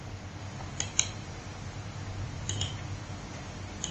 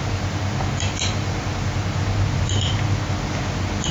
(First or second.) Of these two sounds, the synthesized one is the first